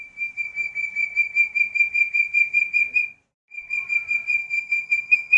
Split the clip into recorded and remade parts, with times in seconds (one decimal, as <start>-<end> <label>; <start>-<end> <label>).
0.0-4.4 recorded; 4.4-5.4 remade